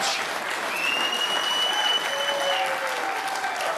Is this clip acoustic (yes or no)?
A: yes